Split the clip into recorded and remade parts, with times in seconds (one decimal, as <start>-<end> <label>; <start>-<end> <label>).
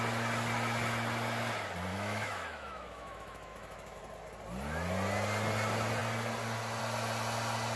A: 0.0-1.9 recorded; 1.9-4.0 remade; 4.0-7.8 recorded